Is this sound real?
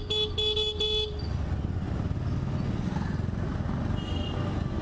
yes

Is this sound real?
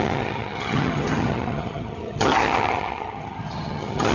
no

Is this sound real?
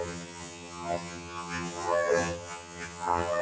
no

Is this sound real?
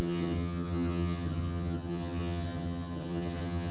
no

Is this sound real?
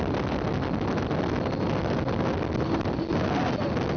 yes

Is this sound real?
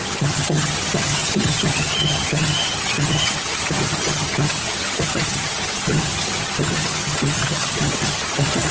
no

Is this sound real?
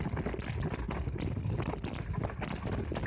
yes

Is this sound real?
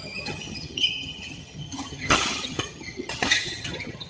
no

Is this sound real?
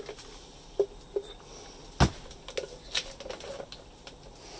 yes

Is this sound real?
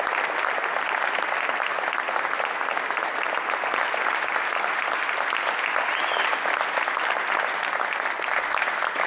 yes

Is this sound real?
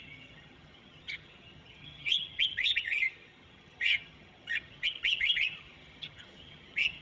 no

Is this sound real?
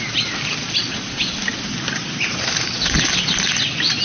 yes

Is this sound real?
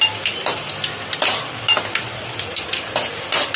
yes